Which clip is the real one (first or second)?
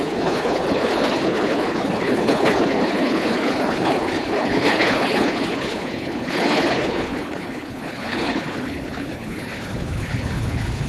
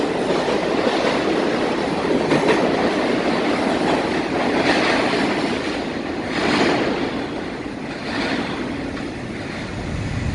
second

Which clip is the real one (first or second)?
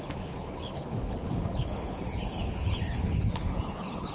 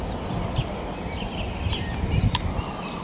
second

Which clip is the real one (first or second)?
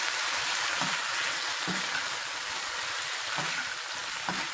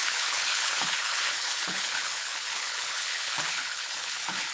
first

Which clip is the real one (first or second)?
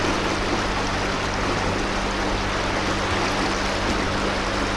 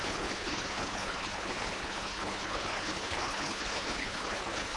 first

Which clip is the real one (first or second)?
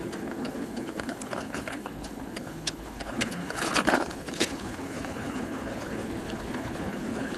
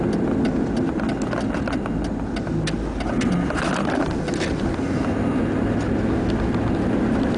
second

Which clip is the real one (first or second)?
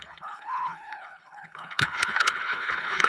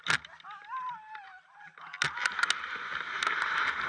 second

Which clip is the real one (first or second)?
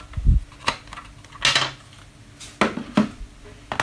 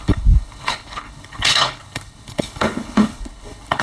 first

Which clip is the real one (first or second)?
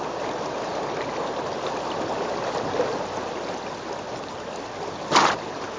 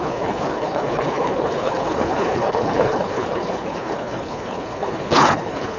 first